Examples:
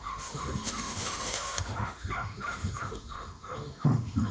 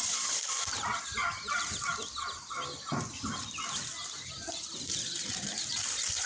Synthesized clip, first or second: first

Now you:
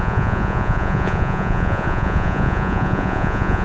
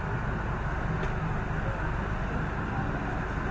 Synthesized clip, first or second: first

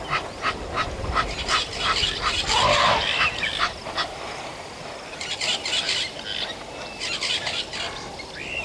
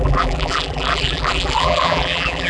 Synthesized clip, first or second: second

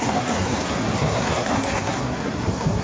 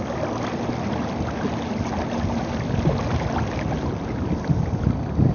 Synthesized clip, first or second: first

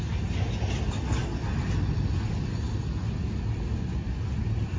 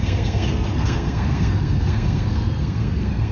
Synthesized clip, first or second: second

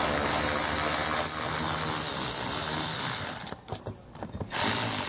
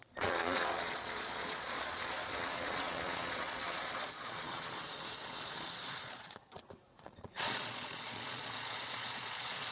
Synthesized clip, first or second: second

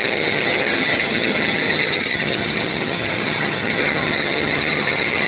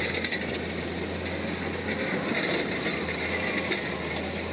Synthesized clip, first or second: first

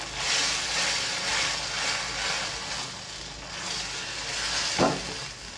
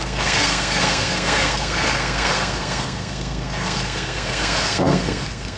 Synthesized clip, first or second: second